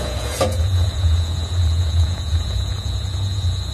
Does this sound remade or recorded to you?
remade